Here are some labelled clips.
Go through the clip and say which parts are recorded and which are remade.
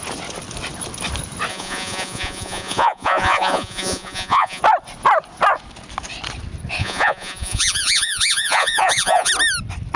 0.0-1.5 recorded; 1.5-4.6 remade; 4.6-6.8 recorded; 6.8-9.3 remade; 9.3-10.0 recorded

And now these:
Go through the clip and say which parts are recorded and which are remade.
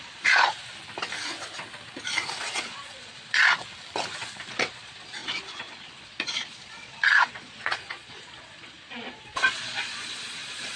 0.0-0.6 remade; 0.6-2.4 recorded; 2.4-3.4 remade; 3.4-4.5 recorded; 4.5-10.8 remade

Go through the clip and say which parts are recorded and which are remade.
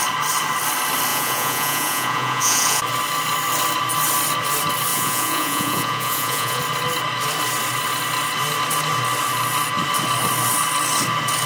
0.0-1.1 recorded; 1.1-2.8 remade; 2.8-4.9 recorded; 4.9-6.6 remade; 6.6-11.5 recorded